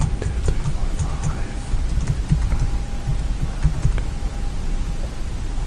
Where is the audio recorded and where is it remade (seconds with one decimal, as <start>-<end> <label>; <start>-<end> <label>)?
0.0-5.7 recorded